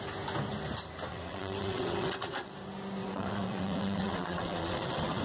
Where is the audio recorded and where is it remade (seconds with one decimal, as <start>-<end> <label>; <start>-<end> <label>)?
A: 0.0-1.1 recorded; 1.1-2.5 remade; 2.5-3.0 recorded; 3.0-5.2 remade